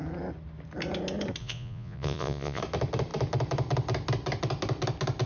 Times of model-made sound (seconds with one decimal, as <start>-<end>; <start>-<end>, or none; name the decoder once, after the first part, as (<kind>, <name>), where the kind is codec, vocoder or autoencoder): 1.4-2.6 (vocoder, Vocos)